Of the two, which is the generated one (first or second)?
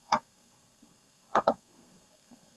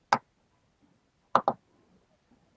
first